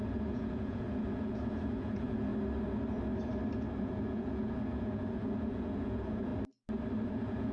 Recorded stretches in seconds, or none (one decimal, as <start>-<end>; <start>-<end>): 2.3-3.8; 6.3-7.1